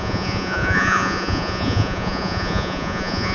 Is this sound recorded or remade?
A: remade